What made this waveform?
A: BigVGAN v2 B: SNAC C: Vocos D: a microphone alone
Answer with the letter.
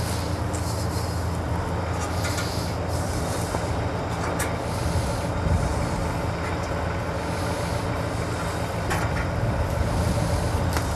D